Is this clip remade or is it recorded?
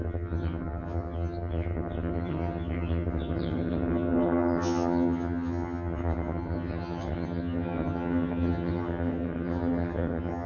remade